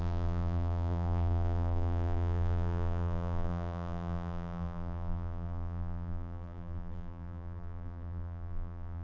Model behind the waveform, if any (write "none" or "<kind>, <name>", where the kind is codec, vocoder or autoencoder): vocoder, BigVGAN v2